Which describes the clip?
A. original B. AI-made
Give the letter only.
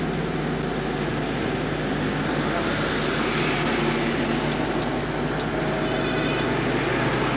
A